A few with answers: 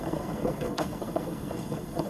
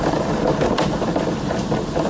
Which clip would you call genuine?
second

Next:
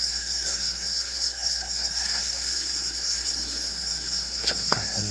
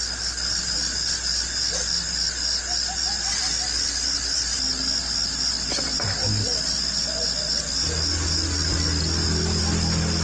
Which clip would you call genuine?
second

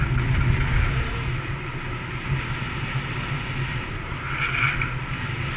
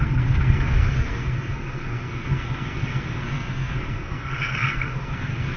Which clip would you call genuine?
first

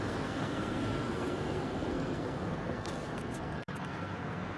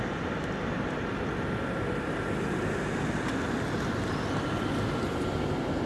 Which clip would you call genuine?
second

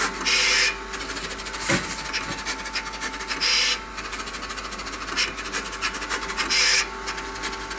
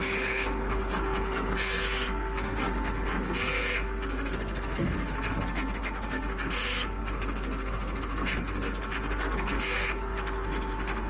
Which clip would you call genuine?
first